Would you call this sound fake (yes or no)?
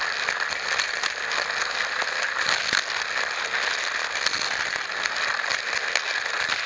no